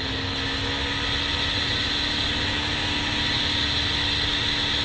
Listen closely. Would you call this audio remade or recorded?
recorded